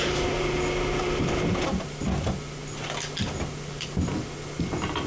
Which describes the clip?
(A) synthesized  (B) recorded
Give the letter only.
B